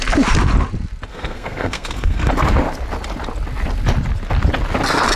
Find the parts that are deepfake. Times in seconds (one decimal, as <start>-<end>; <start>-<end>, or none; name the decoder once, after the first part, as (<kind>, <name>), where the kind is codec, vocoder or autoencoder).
1.1-2.3 (codec, SNAC)